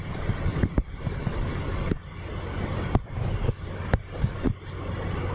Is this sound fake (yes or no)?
no